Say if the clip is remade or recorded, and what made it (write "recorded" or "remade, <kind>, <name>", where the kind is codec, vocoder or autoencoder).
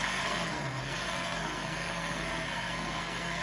remade, codec, SNAC